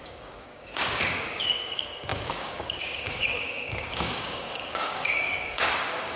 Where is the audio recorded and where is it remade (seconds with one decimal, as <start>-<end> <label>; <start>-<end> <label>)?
0.0-6.2 remade